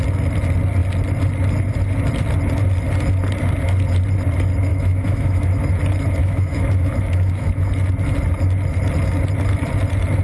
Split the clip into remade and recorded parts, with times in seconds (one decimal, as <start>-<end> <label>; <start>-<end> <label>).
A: 0.0-4.7 recorded; 4.7-5.6 remade; 5.6-6.2 recorded; 6.2-7.7 remade; 7.7-10.2 recorded